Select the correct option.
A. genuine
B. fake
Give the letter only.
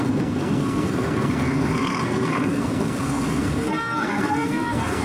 B